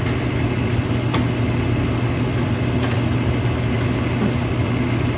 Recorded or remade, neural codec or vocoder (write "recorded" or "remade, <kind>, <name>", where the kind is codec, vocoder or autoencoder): recorded